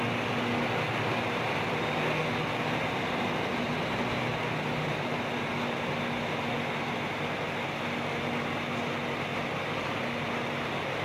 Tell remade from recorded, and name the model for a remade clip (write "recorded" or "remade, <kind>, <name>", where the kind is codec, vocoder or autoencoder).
recorded